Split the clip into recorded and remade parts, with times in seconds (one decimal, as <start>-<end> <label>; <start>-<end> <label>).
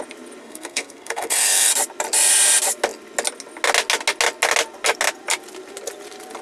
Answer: 0.0-0.4 recorded; 0.4-1.7 remade; 1.7-6.4 recorded